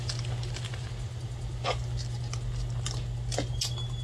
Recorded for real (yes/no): yes